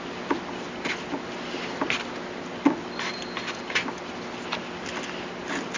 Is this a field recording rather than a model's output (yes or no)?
yes